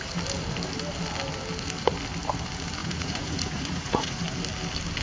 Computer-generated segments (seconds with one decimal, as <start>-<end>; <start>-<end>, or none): 2.8-4.2